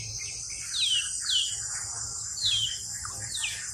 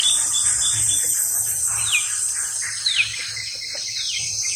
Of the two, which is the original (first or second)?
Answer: first